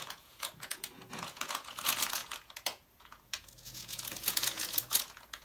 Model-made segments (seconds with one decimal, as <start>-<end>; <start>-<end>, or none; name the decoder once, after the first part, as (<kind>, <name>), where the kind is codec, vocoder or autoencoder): 0.0-5.4 (vocoder, Vocos)